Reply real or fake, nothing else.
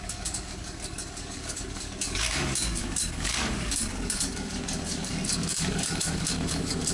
fake